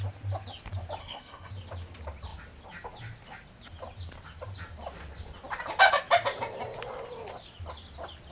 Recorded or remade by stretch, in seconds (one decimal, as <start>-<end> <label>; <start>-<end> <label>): 0.0-1.0 recorded; 1.0-1.5 remade; 1.5-8.3 recorded